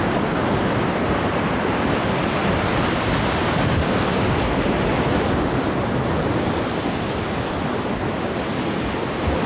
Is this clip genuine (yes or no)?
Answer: yes